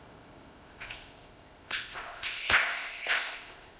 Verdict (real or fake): fake